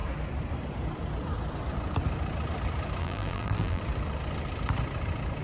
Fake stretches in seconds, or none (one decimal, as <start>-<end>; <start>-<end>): 3.0-3.8